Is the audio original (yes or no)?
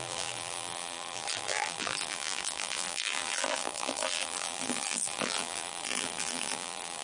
no